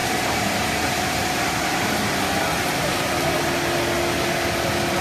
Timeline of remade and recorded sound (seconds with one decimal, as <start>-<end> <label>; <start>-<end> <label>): 0.0-2.9 remade; 2.9-5.0 recorded